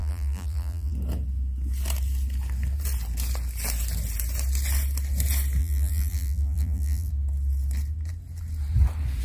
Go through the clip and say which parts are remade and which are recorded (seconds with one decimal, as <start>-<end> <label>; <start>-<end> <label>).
0.0-0.9 remade; 0.9-5.6 recorded; 5.6-7.1 remade; 7.1-9.2 recorded